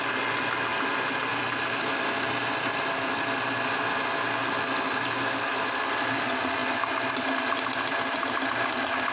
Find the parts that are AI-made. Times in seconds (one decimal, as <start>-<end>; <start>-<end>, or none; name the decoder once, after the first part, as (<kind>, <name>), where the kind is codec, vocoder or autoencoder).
none